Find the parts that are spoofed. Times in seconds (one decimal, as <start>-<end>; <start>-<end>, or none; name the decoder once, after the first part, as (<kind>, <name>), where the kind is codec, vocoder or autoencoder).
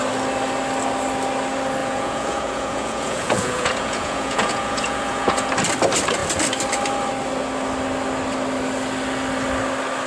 1.8-5.5 (vocoder, Vocos)